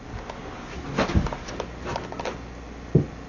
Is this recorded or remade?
recorded